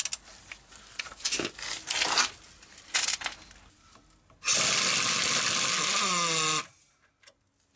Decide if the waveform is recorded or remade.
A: recorded